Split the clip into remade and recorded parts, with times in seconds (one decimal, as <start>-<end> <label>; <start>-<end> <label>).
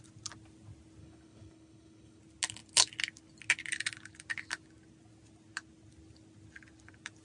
0.0-1.0 recorded; 1.0-2.2 remade; 2.2-7.2 recorded